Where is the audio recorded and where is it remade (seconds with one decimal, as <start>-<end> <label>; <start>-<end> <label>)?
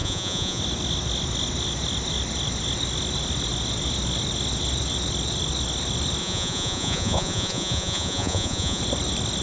0.0-0.6 remade; 0.6-6.2 recorded; 6.2-8.8 remade; 8.8-9.4 recorded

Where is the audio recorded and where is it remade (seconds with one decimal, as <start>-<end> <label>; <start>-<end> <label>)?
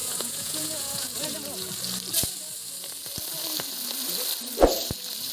0.0-1.7 remade; 1.7-5.3 recorded